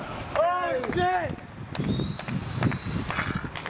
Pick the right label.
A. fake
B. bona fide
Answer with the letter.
B